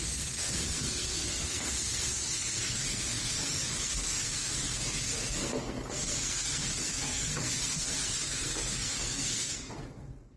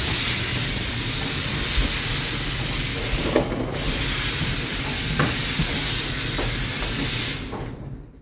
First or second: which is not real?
first